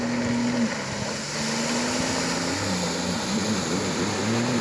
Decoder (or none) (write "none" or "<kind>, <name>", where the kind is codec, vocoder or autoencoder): none